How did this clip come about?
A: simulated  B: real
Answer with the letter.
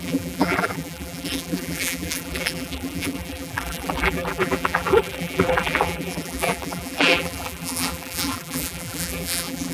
A